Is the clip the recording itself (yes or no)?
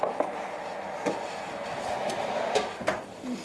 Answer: yes